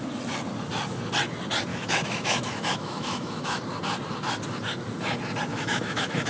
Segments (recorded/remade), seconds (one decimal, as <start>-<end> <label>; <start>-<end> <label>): 0.0-1.7 recorded; 1.7-3.6 remade; 3.6-5.5 recorded; 5.5-6.3 remade